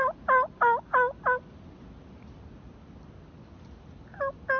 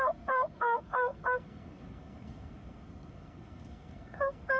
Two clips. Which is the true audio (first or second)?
first